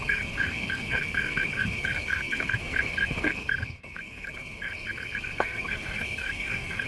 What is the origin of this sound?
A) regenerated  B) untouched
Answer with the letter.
A